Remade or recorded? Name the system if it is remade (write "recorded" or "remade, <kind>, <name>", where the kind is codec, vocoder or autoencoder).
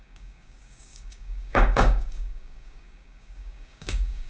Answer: remade, codec, DAC